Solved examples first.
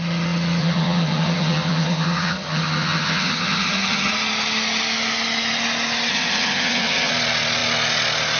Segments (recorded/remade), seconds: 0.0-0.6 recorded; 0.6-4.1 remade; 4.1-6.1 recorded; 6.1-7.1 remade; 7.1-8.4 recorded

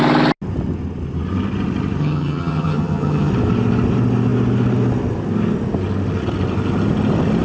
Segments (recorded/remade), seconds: 0.0-2.0 recorded; 2.0-3.3 remade; 3.3-7.4 recorded

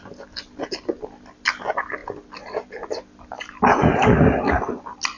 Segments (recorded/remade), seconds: 0.0-5.2 recorded

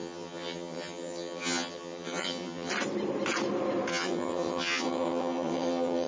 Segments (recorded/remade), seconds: 0.0-2.7 remade; 2.7-3.9 recorded; 3.9-6.1 remade

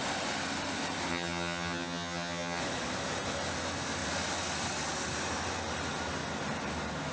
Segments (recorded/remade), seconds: 0.0-1.1 recorded; 1.1-2.6 remade; 2.6-7.1 recorded